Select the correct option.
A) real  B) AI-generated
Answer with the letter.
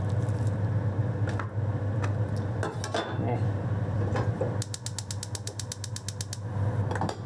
A